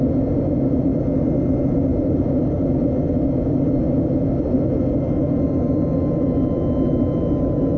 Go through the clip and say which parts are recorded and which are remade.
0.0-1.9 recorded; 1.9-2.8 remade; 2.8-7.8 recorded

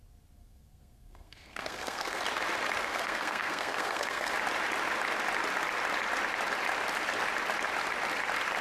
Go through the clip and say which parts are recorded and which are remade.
0.0-0.4 recorded; 0.4-2.2 remade; 2.2-2.8 recorded; 2.8-4.3 remade; 4.3-8.6 recorded

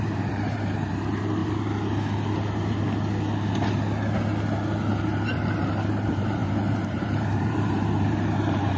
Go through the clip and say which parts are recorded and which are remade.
0.0-1.4 remade; 1.4-5.0 recorded; 5.0-8.8 remade

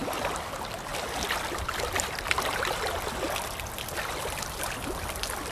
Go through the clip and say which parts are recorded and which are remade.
0.0-5.5 recorded

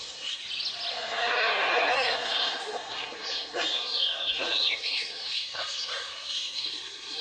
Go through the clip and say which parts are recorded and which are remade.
0.0-0.4 remade; 0.4-0.9 recorded; 0.9-7.2 remade